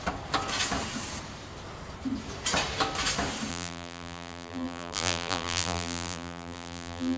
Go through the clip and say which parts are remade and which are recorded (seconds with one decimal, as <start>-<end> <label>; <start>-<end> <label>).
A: 0.0-3.5 recorded; 3.5-7.2 remade